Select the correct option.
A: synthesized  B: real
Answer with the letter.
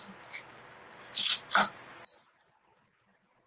B